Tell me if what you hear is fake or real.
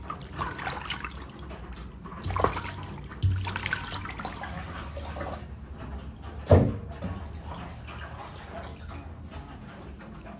real